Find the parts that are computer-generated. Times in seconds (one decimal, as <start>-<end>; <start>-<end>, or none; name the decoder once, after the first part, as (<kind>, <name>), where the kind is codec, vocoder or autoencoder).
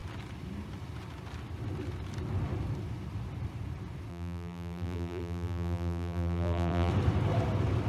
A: 4.1-6.9 (vocoder, BigVGAN v2)